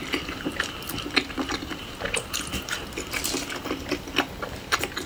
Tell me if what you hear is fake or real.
real